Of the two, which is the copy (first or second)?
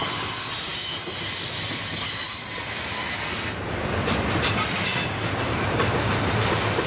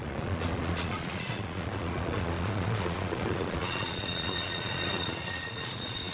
second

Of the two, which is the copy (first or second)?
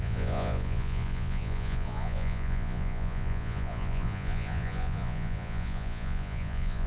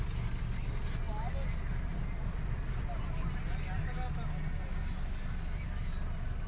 first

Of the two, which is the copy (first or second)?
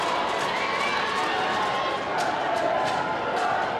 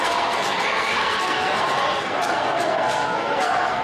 second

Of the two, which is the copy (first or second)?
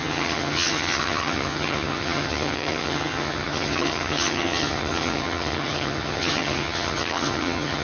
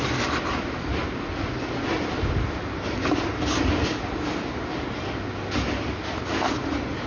first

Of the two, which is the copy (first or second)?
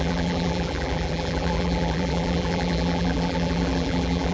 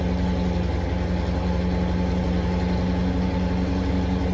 first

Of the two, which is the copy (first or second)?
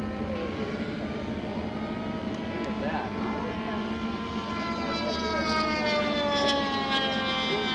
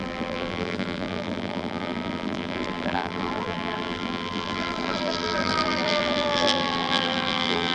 second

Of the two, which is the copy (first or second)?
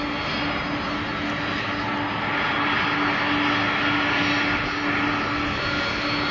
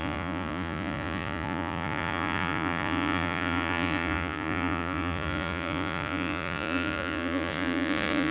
second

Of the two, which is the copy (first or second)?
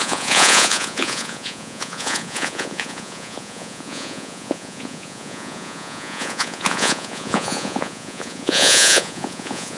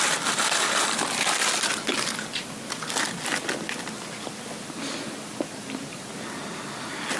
first